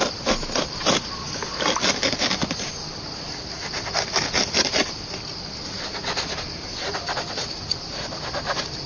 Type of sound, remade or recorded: recorded